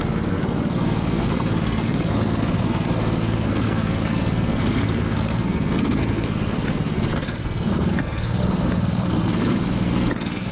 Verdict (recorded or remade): remade